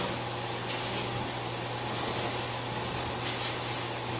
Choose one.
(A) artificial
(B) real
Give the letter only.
B